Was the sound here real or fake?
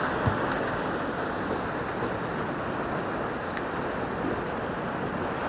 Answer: real